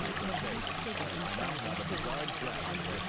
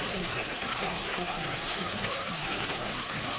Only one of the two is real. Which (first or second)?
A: first